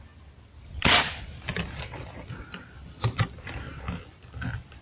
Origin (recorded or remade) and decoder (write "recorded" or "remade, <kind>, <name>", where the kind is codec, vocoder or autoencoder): recorded